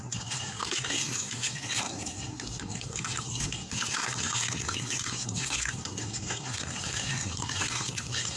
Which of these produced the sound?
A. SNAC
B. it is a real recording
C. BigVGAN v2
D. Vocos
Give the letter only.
A